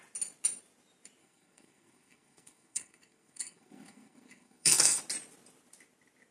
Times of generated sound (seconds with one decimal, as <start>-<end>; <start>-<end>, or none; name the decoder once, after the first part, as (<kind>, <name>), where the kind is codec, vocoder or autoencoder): 1.2-5.0 (codec, SNAC)